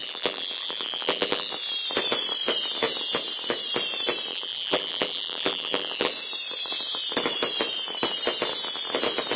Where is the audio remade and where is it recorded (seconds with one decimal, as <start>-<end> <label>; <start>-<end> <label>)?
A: 0.0-1.5 remade; 1.5-4.3 recorded; 4.3-6.1 remade; 6.1-9.4 recorded